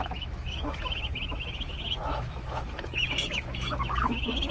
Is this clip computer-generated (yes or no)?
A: yes